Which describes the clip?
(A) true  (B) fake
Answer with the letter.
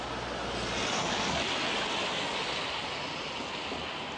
A